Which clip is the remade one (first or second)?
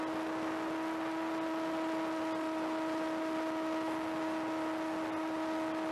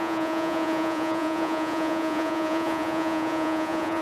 second